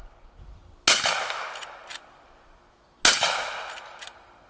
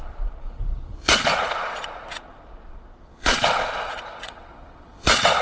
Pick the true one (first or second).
first